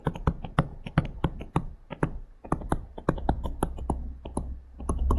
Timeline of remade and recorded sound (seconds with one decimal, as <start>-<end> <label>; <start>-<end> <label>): 0.0-5.2 recorded